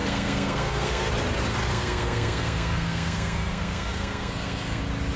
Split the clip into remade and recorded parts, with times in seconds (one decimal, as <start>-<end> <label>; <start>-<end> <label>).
0.0-1.1 remade; 1.1-1.7 recorded; 1.7-4.8 remade; 4.8-5.2 recorded